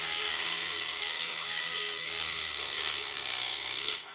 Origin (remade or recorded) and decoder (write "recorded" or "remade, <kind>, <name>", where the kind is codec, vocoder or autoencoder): remade, codec, SNAC